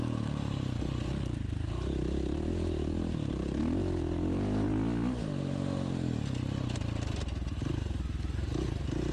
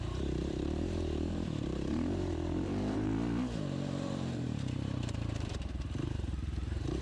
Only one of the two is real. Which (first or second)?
first